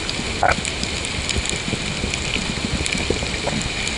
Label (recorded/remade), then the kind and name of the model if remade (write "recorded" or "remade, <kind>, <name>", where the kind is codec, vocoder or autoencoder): recorded